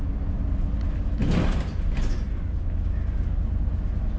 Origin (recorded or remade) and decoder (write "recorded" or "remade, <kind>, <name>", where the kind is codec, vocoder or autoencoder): recorded